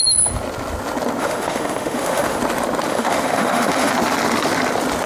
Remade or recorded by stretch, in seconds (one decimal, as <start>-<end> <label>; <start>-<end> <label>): 0.0-1.2 recorded; 1.2-2.4 remade; 2.4-2.9 recorded; 2.9-3.9 remade; 3.9-5.1 recorded